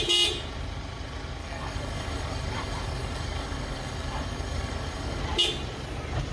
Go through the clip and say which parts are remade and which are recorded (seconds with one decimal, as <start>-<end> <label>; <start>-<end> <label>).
0.0-1.4 recorded; 1.4-5.2 remade; 5.2-6.3 recorded